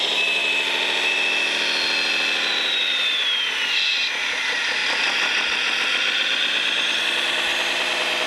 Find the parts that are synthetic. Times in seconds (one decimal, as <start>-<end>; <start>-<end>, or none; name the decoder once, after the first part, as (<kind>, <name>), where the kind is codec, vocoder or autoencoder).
0.0-0.4 (vocoder, BigVGAN v2); 2.5-4.8; 7.0-8.3